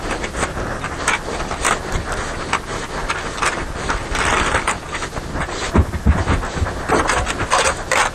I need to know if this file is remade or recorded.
recorded